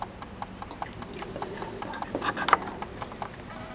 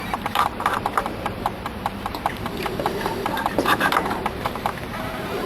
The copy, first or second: second